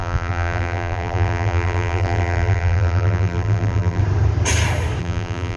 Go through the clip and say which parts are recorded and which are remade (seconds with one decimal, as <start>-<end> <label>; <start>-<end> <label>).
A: 0.0-4.0 remade; 4.0-5.0 recorded; 5.0-5.6 remade